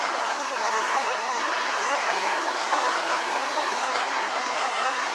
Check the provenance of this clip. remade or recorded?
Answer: remade